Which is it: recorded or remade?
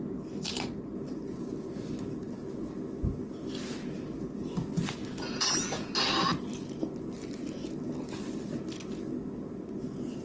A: recorded